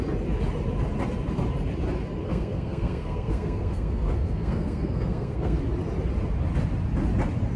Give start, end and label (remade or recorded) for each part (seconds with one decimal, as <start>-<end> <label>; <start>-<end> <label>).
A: 0.0-2.2 recorded; 2.2-5.6 remade; 5.6-7.6 recorded